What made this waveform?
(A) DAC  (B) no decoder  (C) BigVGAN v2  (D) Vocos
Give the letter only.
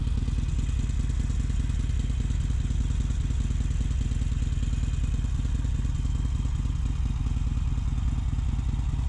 B